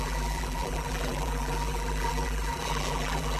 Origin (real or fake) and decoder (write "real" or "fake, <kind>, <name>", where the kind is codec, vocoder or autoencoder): fake, vocoder, BigVGAN v2